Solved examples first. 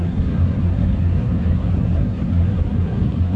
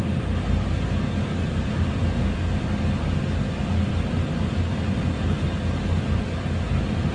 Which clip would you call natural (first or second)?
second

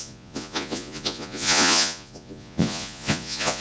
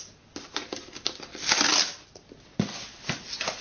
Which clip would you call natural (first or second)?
second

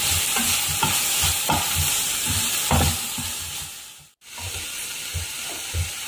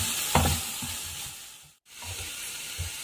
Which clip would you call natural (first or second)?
first